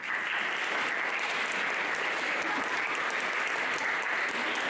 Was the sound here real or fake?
real